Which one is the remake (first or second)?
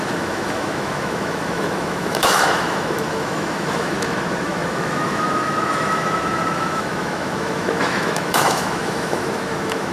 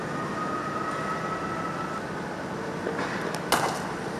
first